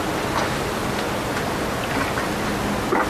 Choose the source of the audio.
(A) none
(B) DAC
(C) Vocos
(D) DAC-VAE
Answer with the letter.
A